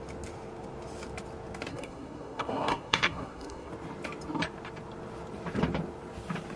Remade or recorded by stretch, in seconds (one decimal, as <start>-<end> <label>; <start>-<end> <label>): 0.0-1.7 recorded; 1.7-3.7 remade; 3.7-6.6 recorded